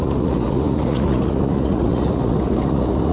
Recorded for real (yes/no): no